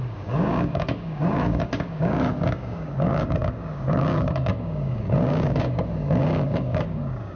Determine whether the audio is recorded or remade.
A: remade